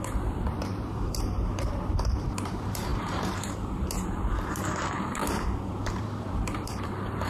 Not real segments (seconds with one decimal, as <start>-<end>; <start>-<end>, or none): 0.0-5.2; 5.9-7.3